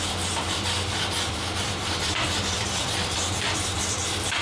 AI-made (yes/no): yes